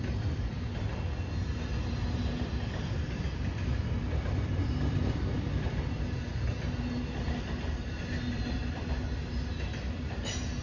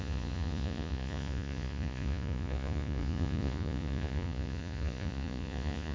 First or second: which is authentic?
first